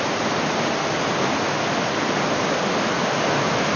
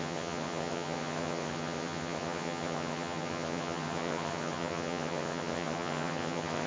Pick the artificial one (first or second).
second